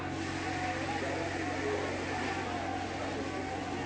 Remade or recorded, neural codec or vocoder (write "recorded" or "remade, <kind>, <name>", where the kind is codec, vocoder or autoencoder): recorded